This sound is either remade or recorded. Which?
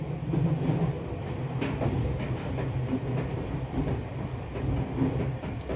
recorded